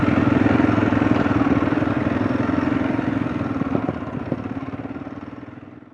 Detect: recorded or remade recorded